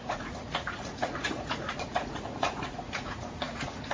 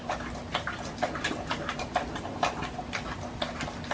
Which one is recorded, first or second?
second